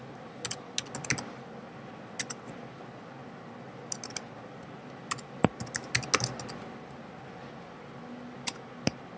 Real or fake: real